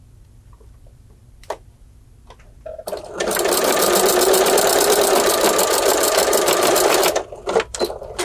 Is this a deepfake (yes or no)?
yes